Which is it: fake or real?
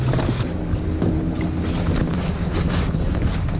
real